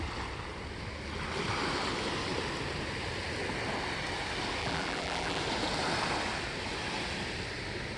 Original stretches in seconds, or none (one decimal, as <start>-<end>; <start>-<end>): 0.0-4.6; 5.4-8.0